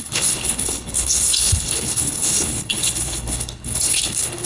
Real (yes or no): no